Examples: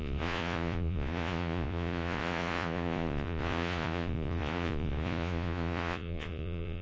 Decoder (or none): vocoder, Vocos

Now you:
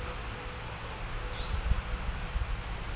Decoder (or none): none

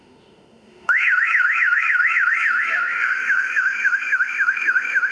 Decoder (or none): autoencoder, DAC-VAE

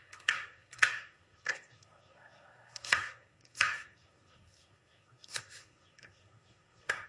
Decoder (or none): codec, SNAC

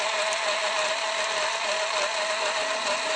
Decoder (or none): none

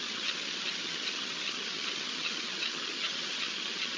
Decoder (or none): vocoder, HiFi-GAN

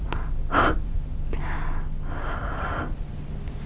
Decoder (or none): none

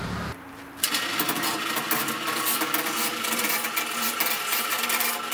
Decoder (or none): vocoder, BigVGAN v2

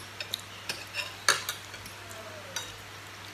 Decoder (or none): none